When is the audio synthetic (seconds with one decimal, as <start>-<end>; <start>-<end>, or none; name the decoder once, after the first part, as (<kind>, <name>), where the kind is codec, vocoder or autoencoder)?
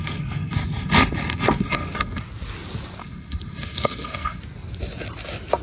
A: 0.0-2.2 (codec, SNAC); 3.0-4.4